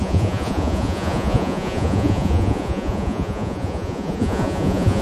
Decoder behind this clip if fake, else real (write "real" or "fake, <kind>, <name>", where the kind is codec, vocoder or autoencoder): fake, vocoder, Vocos